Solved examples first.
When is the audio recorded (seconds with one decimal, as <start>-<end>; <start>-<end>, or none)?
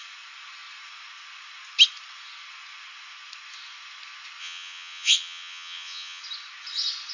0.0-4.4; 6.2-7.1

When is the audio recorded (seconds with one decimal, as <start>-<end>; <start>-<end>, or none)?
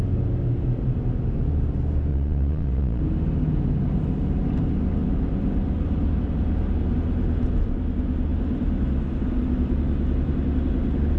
0.0-2.1; 3.0-11.2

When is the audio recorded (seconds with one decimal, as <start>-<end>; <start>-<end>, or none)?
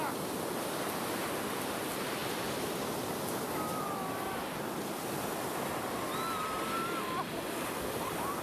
0.0-8.4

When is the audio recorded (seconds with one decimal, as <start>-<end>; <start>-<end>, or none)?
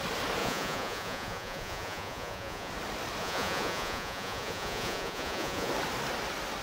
0.0-0.4; 2.7-3.2; 5.7-6.6